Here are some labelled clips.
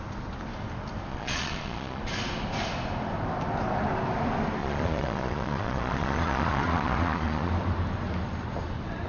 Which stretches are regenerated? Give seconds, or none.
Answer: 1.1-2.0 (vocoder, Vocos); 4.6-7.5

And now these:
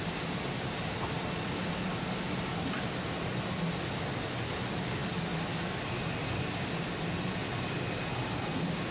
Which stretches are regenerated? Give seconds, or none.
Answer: none

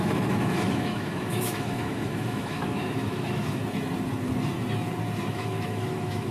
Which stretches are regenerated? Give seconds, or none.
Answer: 0.0-3.6 (autoencoder, DAC-VAE); 5.3-6.3

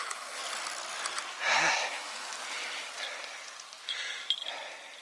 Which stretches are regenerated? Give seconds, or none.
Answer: 0.0-0.4 (autoencoder, DAC-VAE); 1.9-2.3

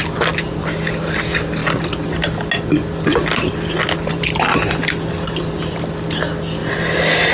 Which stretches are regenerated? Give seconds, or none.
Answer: none

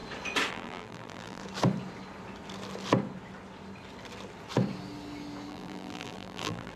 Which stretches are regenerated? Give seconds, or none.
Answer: 0.5-1.4 (vocoder, BigVGAN v2); 5.5-6.8